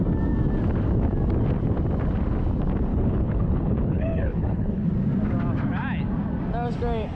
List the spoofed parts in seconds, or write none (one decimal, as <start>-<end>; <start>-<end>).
2.9-4.9